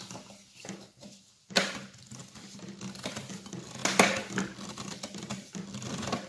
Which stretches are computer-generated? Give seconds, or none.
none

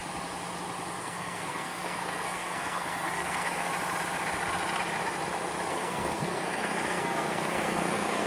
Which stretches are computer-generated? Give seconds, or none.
1.0-3.7 (codec, SNAC); 5.7-8.3

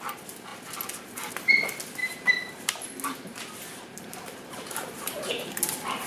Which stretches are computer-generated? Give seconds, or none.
2.0-2.7 (vocoder, BigVGAN v2); 3.9-5.3

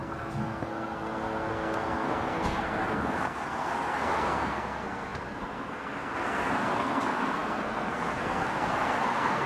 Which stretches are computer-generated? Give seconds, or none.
0.0-9.5 (codec, SNAC)

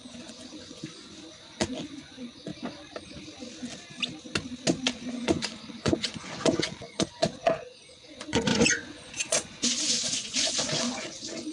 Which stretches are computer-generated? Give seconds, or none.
0.0-2.5 (vocoder, Vocos); 5.1-11.5